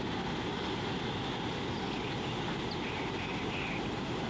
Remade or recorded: recorded